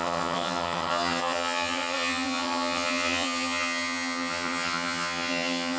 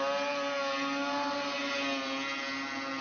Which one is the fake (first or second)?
first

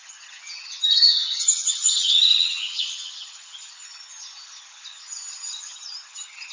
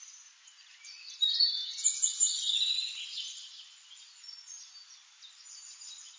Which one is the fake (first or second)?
first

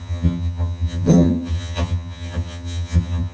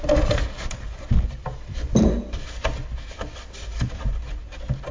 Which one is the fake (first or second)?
first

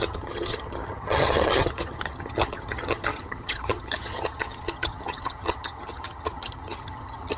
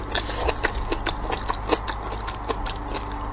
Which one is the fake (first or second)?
first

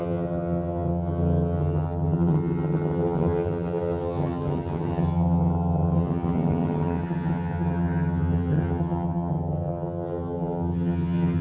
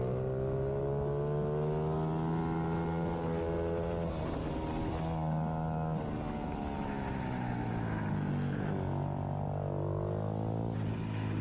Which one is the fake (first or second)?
first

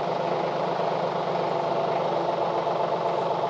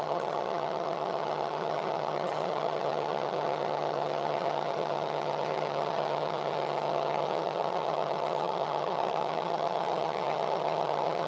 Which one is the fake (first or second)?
second